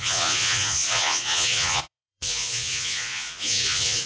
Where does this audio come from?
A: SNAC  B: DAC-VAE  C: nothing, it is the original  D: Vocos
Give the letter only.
D